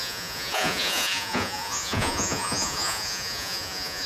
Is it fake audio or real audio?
fake